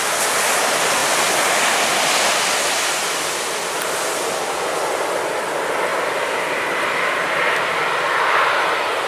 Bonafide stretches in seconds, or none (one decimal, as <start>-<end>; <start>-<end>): 0.0-9.1